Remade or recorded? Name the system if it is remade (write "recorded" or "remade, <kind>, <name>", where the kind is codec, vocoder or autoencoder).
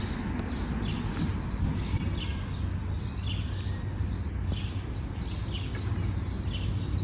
recorded